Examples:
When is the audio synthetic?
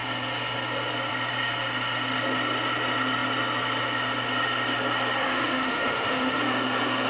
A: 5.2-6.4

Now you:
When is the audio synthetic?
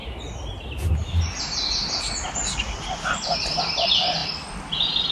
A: none